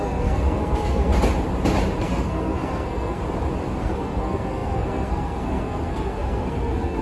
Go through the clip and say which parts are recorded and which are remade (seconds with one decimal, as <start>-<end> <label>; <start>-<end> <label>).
0.0-1.1 remade; 1.1-2.0 recorded; 2.0-3.2 remade; 3.2-3.8 recorded; 3.8-7.0 remade